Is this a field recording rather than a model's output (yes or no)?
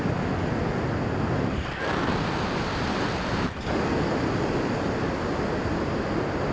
yes